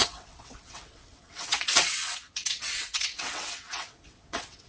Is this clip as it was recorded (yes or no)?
no